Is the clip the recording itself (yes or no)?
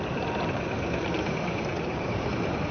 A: yes